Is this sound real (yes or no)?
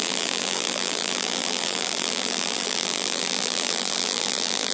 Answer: no